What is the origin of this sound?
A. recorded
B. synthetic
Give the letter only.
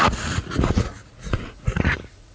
B